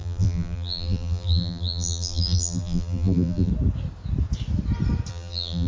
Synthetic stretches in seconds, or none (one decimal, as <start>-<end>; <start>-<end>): 0.0-3.5; 5.1-5.7